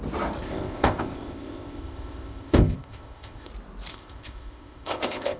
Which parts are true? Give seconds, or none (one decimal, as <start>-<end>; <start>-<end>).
0.0-0.4; 3.5-3.9